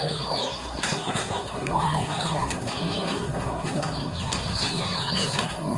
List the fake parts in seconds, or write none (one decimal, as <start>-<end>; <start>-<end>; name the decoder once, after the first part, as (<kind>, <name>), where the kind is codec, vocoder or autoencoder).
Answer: 0.0-5.8 (codec, SNAC)